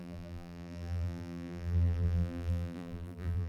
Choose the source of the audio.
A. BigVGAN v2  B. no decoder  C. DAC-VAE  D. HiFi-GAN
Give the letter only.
A